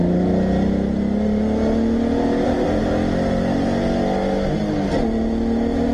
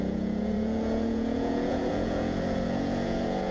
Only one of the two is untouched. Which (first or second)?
first